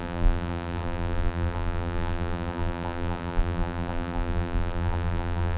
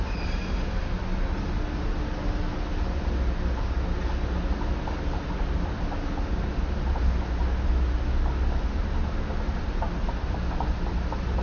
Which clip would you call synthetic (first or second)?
first